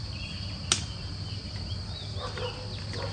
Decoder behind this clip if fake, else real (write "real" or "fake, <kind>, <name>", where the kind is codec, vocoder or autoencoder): real